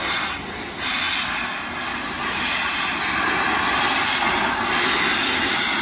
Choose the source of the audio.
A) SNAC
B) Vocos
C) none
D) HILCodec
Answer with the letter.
C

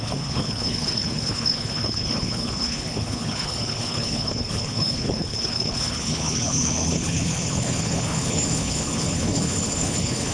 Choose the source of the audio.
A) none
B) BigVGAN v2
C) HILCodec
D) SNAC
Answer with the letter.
C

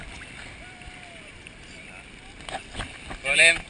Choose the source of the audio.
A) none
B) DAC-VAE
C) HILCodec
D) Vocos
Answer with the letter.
A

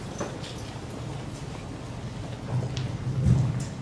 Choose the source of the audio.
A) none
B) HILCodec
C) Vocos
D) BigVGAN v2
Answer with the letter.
A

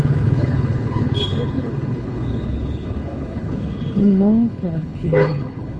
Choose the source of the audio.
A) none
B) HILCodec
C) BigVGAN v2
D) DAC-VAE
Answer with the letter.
B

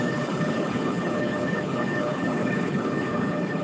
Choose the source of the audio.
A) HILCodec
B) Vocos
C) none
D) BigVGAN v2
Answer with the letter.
A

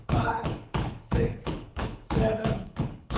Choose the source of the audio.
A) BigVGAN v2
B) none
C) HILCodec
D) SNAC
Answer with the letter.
C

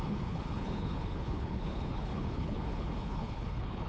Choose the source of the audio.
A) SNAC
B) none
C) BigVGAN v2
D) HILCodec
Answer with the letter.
D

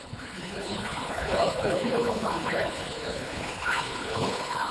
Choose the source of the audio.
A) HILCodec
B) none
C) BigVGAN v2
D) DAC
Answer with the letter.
A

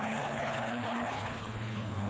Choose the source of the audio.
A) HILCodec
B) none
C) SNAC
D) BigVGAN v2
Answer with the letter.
A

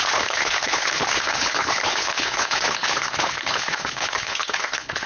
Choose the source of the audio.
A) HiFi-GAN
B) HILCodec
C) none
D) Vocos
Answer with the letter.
B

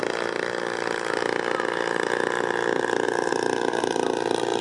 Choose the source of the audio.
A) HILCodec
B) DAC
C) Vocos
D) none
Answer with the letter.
D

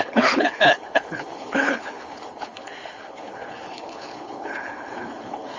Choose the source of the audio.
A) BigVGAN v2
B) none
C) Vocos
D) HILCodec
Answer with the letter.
D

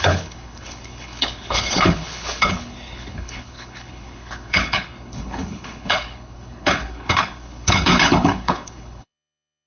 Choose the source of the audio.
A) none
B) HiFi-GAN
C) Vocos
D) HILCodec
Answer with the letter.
D